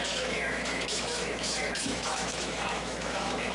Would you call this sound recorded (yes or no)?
no